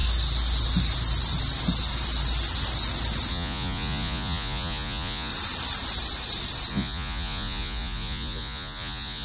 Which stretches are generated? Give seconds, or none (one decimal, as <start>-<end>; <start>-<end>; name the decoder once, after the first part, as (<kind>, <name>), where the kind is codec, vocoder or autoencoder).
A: 3.3-5.3 (vocoder, Vocos); 6.7-9.2